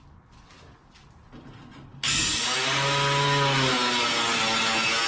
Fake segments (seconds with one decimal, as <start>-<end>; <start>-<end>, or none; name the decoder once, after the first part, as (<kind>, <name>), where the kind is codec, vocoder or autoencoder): none